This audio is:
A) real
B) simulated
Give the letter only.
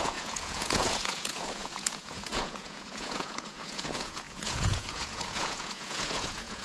B